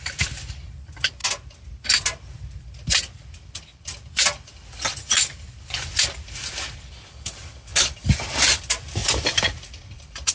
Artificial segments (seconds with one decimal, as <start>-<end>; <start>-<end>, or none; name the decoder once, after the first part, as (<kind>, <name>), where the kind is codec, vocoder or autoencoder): 0.0-1.2 (vocoder, BigVGAN v2); 2.6-7.7; 8.6-9.0; 9.6-10.3